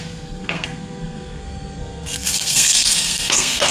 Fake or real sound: fake